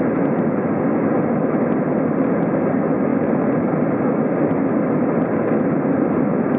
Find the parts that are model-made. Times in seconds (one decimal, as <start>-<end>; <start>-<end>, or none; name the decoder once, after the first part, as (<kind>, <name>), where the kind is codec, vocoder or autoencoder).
none